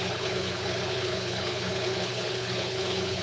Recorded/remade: remade